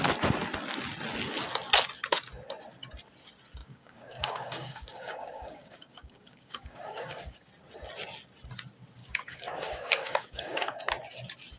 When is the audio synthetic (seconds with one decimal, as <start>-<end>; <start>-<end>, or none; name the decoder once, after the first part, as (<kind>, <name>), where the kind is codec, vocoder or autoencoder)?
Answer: 3.6-7.5 (codec, DAC); 9.0-10.8